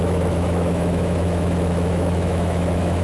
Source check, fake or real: fake